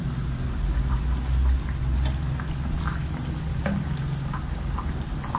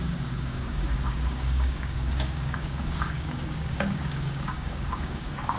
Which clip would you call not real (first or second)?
second